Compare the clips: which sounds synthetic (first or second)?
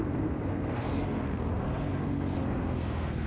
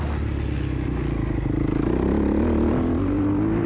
first